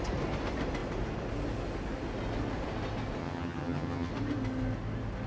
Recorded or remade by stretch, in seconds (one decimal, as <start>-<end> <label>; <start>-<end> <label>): 0.0-3.2 recorded; 3.2-4.1 remade; 4.1-5.3 recorded